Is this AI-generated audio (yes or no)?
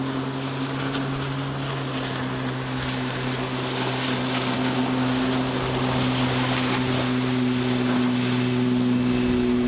no